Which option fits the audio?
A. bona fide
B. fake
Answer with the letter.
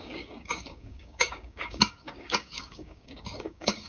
B